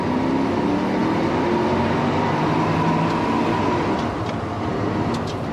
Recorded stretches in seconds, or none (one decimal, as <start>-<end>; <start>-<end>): 0.0-5.5